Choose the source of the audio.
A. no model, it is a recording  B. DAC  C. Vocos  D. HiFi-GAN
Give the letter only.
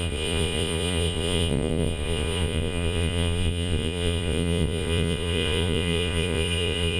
C